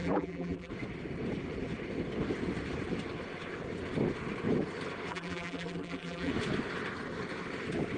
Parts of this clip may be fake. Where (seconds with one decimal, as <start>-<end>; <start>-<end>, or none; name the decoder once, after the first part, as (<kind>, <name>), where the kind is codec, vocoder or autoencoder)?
0.0-0.7 (vocoder, BigVGAN v2); 5.1-6.3